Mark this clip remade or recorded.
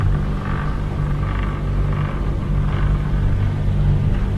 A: recorded